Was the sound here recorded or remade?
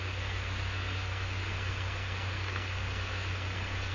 remade